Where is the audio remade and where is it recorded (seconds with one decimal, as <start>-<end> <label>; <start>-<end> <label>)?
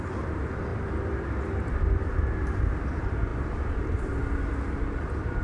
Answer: 0.0-5.4 recorded